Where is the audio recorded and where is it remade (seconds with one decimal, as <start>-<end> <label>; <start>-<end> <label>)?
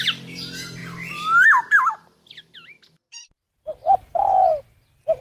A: 0.0-3.8 recorded; 3.8-4.6 remade; 4.6-5.2 recorded